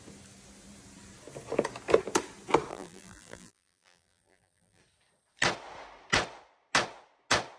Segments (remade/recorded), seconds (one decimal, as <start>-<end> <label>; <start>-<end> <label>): 0.0-2.7 recorded; 2.7-4.8 remade; 4.8-7.6 recorded